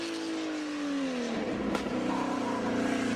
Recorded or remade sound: recorded